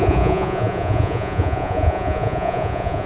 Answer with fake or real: fake